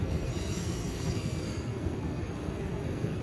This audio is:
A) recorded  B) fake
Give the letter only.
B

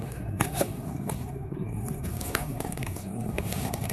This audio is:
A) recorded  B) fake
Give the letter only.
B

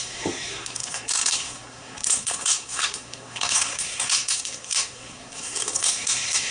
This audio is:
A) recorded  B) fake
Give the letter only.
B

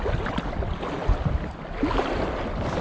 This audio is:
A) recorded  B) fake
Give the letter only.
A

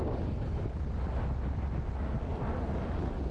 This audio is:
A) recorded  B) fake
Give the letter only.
A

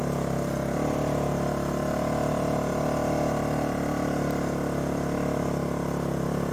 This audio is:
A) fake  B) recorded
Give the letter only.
B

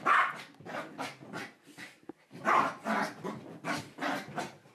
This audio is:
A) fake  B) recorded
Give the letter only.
B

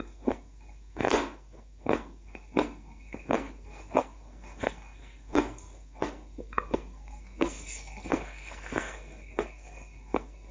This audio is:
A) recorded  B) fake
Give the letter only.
B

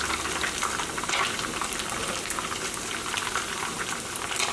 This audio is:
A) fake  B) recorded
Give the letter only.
B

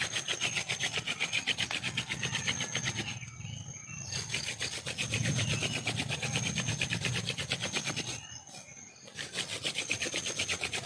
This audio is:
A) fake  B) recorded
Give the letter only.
B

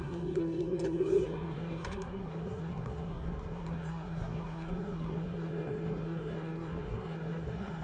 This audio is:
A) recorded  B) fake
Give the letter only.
B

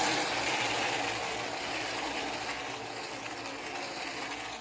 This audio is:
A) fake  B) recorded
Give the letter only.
B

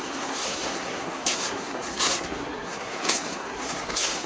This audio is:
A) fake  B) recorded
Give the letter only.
A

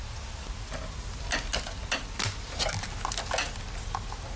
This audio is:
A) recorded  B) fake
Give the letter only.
A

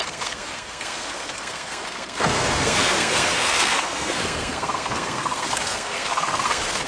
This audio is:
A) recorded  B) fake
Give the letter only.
B